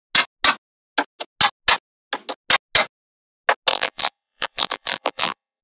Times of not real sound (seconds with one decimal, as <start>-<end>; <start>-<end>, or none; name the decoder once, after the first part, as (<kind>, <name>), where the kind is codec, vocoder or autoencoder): 3.7-5.6 (vocoder, BigVGAN v2)